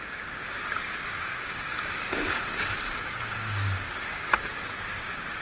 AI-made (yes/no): yes